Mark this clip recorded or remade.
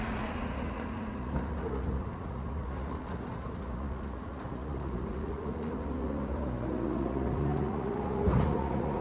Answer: remade